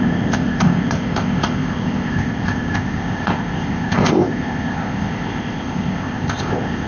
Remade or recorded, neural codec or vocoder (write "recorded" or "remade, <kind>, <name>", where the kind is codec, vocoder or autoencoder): remade, codec, ZipCodec